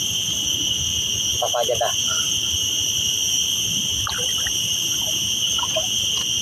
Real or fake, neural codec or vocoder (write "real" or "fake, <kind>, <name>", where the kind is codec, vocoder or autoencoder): real